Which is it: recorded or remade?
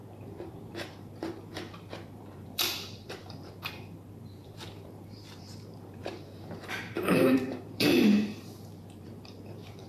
remade